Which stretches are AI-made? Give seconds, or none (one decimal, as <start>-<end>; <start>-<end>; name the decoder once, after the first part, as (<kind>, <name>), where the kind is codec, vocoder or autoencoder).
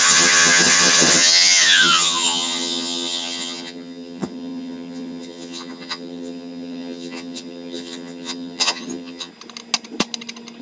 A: 0.0-9.3 (vocoder, HiFi-GAN)